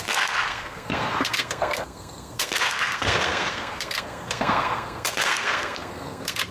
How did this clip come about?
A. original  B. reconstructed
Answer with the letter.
B